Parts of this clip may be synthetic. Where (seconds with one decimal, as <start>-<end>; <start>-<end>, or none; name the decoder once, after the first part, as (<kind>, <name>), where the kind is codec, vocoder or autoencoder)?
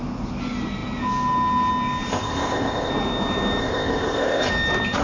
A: 2.1-2.9 (codec, ZipCodec); 3.6-4.5